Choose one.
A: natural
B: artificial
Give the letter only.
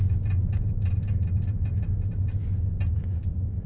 A